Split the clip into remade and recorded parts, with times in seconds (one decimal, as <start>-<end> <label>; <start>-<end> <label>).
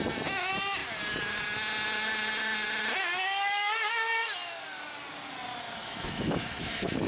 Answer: 0.0-5.8 recorded; 5.8-7.1 remade